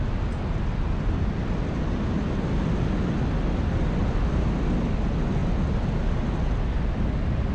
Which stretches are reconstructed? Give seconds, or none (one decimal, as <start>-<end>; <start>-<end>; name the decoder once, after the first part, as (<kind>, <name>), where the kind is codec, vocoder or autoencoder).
none